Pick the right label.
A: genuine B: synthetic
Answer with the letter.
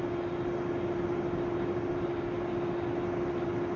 A